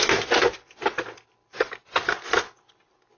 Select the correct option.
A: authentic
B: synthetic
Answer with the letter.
A